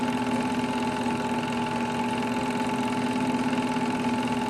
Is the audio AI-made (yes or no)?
no